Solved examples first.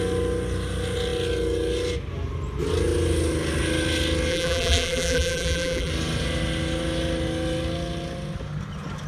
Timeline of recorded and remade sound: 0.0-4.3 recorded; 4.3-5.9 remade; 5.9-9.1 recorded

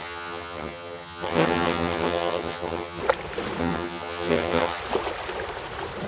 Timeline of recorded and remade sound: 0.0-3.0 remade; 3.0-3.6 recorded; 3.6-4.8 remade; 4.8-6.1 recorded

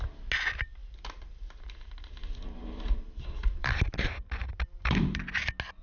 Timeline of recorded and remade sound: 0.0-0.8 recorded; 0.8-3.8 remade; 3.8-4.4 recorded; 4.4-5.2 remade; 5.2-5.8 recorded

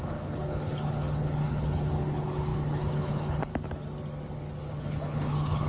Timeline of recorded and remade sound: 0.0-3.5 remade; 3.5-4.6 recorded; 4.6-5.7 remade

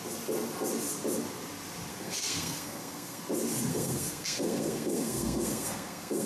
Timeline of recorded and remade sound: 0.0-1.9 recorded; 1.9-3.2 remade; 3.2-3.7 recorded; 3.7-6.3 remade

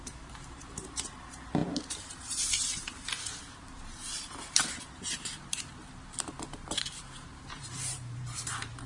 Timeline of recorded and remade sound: 0.0-8.9 remade